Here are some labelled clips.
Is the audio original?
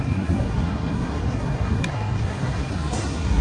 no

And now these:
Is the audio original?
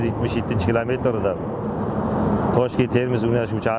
yes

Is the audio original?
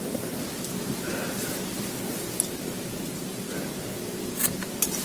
yes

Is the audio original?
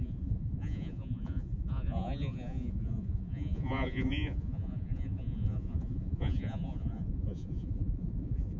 no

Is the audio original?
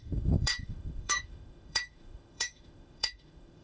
no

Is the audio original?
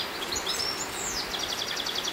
yes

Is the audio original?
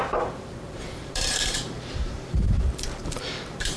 no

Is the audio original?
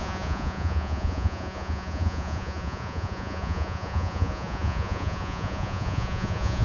no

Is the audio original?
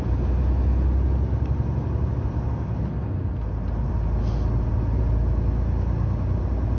yes